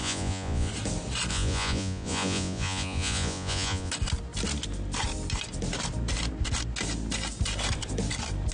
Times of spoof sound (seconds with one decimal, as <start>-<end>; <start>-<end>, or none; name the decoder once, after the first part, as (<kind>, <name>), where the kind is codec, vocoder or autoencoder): 0.0-0.7 (vocoder, Vocos); 1.3-3.9